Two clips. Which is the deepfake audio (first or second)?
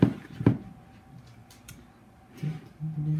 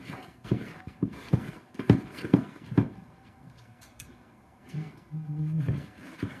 second